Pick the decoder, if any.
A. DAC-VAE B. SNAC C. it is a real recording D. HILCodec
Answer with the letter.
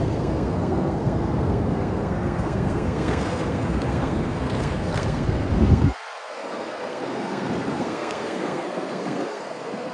B